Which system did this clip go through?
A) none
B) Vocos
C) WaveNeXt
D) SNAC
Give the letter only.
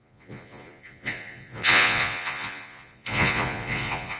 B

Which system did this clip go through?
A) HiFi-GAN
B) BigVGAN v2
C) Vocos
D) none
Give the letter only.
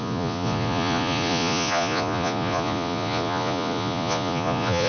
C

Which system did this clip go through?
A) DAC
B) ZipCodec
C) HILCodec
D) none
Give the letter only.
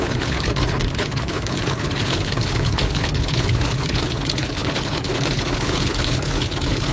C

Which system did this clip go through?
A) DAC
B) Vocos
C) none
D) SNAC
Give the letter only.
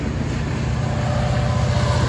C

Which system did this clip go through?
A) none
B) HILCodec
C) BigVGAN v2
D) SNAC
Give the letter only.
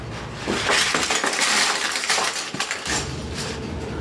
A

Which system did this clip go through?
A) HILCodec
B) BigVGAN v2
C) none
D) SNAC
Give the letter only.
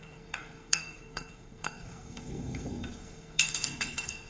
D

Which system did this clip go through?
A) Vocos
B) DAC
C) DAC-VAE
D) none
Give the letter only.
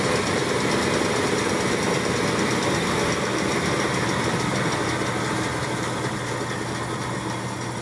D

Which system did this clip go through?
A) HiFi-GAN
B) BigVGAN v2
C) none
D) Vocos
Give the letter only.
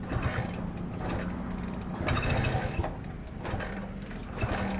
C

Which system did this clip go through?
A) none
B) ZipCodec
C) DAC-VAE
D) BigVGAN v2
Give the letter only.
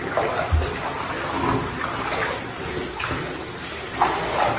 A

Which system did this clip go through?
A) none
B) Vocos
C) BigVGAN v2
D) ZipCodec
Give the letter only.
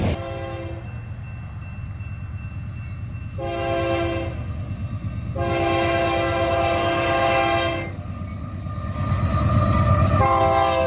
A